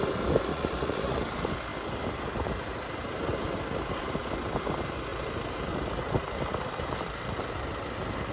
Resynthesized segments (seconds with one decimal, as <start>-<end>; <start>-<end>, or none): 0.5-1.2